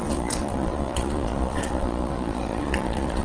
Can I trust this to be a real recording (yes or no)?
no